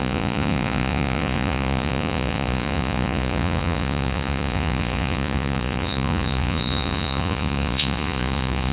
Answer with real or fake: fake